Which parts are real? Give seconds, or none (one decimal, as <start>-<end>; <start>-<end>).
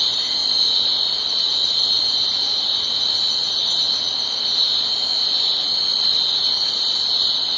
0.0-7.6